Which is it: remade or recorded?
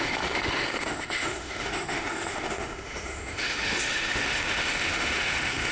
remade